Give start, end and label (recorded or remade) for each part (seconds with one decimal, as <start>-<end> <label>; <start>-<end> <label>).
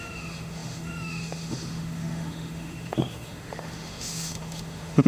0.0-5.1 remade